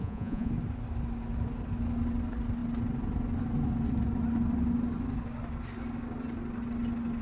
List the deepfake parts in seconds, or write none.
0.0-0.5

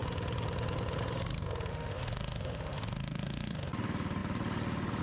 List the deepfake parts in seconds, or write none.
1.7-3.7

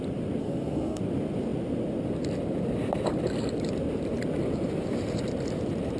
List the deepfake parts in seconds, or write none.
0.4-1.0

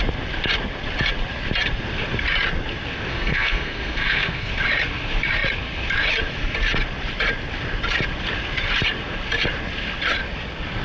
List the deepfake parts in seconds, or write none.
3.1-4.5